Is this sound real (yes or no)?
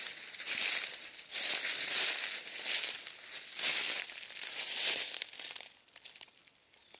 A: yes